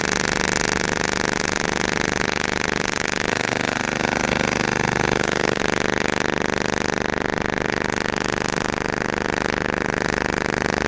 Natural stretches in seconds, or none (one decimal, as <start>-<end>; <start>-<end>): 0.0-3.3; 5.6-10.9